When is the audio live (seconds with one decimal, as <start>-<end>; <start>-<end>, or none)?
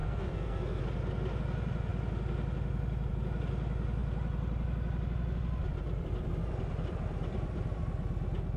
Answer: 0.8-8.6